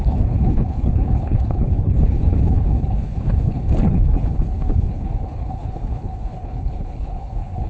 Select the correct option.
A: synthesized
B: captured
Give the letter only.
A